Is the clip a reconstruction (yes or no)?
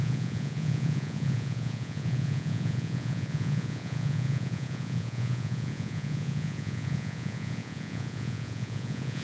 yes